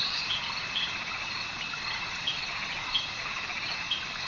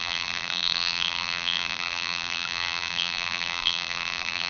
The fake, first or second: second